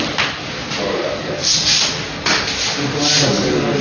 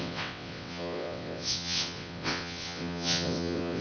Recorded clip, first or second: first